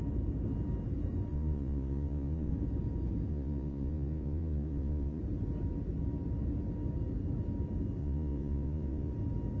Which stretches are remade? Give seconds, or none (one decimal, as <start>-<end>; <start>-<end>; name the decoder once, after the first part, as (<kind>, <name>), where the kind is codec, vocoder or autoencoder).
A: 1.3-2.5 (vocoder, Vocos); 3.3-5.2; 8.0-9.1